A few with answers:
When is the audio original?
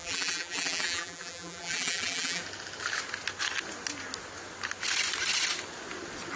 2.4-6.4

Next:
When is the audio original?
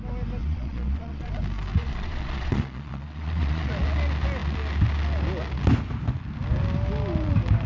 0.0-0.4; 1.3-1.8; 3.7-7.7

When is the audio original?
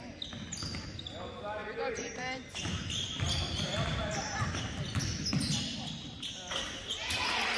0.0-1.6; 4.0-7.6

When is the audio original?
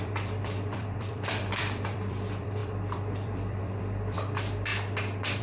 4.7-5.4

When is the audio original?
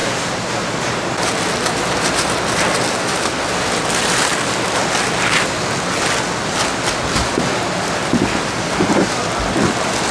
0.0-10.1